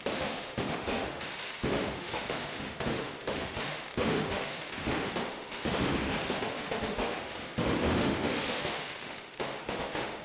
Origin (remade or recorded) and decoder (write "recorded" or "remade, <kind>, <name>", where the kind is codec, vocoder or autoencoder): remade, autoencoder, DAC-VAE